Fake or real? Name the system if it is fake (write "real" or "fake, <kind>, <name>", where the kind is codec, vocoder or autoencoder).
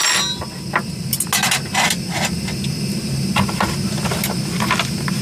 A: real